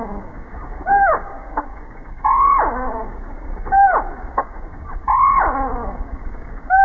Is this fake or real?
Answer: fake